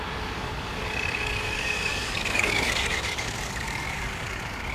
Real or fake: fake